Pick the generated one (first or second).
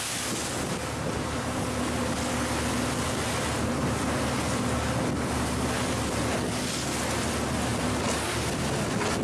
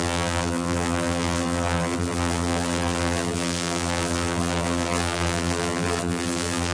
second